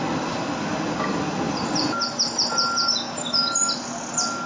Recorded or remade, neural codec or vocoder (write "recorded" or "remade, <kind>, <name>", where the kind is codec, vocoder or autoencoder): recorded